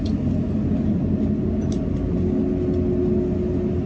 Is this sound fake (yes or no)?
no